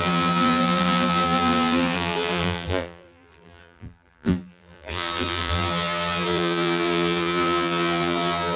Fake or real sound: fake